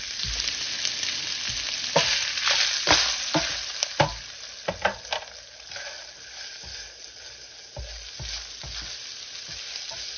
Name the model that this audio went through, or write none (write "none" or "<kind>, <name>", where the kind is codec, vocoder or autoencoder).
none